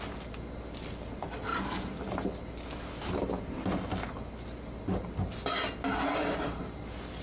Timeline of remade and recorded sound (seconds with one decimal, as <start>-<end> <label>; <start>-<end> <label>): 0.0-7.2 recorded